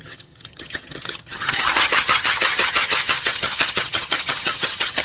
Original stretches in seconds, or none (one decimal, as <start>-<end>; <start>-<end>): none